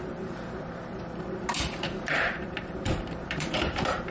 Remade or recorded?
remade